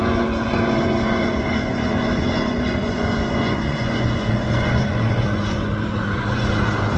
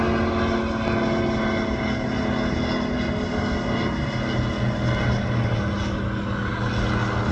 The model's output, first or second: first